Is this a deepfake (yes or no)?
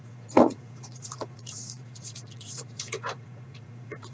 yes